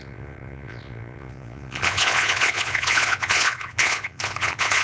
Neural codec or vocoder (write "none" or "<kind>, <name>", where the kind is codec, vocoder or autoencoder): vocoder, Vocos